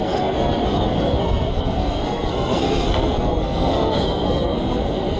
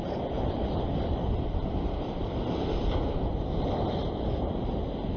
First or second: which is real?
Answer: second